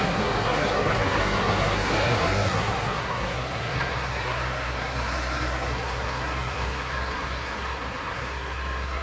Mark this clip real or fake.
fake